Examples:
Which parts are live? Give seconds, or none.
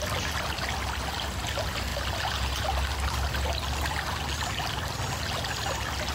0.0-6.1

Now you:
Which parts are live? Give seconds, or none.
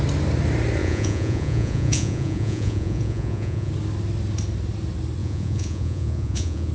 0.0-0.8; 3.7-5.2